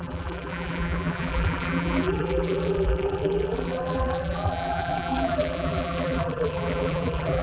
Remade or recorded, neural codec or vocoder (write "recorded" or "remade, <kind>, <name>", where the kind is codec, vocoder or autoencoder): remade, vocoder, BigVGAN v2